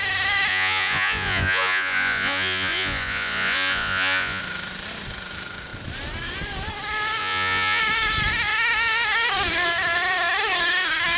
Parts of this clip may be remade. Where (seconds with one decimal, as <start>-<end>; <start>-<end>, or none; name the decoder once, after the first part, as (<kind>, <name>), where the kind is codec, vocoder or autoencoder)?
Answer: 0.5-4.4 (vocoder, Vocos); 7.2-7.8